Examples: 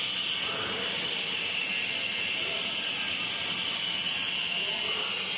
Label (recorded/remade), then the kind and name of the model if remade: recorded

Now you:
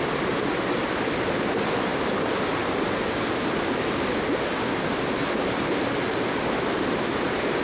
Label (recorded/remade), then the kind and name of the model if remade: recorded